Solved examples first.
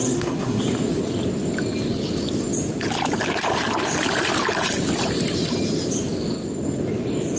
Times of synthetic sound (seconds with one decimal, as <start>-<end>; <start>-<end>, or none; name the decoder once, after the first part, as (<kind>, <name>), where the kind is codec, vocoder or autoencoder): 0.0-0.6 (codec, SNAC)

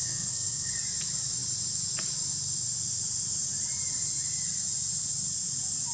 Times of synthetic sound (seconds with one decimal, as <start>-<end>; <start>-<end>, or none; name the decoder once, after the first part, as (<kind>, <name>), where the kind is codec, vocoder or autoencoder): 0.0-0.7 (codec, SNAC)

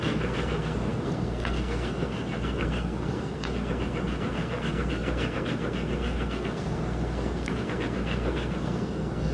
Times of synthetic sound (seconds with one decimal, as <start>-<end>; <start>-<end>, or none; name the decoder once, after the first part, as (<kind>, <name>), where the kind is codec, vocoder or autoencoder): 0.0-9.3 (codec, SNAC)

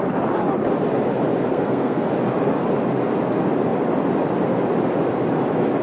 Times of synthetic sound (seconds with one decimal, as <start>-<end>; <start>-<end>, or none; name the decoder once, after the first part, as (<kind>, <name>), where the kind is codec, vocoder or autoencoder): 1.5-2.1 (codec, SNAC)

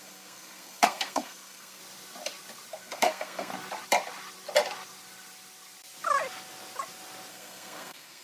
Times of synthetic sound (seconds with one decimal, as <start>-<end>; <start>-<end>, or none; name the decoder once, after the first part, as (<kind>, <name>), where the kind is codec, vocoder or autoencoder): 0.0-1.8 (codec, SNAC); 2.7-3.5; 7.3-8.2

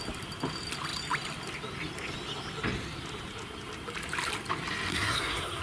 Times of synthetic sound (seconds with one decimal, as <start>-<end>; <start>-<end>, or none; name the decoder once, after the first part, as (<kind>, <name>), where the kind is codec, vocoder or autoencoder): 4.9-5.6 (codec, SNAC)

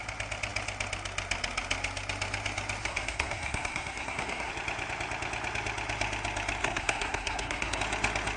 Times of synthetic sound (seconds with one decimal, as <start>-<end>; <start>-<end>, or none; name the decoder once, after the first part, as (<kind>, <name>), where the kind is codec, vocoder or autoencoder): 2.8-4.5 (codec, SNAC); 6.6-7.8

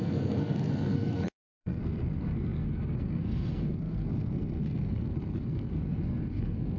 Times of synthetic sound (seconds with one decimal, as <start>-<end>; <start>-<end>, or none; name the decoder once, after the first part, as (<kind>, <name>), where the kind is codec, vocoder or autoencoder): 0.0-6.8 (codec, SNAC)